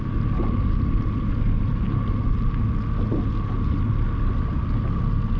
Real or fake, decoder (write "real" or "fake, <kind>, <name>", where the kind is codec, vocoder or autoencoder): real